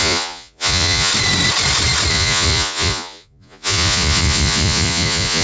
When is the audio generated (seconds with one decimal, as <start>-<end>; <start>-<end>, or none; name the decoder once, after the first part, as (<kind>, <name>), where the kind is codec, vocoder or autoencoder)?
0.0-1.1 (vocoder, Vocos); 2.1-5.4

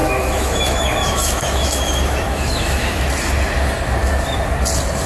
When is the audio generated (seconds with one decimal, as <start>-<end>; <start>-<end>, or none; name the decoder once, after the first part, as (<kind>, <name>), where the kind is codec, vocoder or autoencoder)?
0.0-3.1 (autoencoder, DAC-VAE)

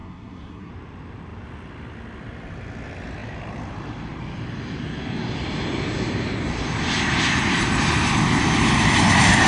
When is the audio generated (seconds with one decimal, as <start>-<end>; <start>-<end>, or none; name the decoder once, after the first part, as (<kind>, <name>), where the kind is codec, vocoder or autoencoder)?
0.0-0.7 (codec, SNAC)